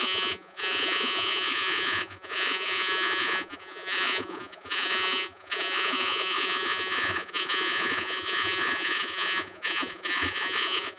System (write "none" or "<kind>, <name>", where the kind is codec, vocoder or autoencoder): vocoder, Vocos